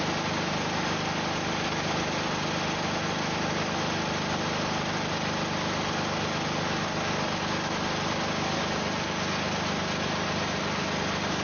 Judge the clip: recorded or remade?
recorded